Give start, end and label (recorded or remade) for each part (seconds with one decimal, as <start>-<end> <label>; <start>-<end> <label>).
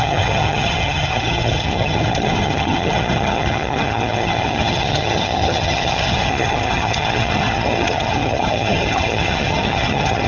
0.0-10.3 remade